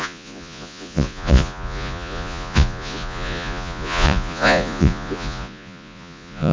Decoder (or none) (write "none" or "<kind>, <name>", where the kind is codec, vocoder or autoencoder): vocoder, Vocos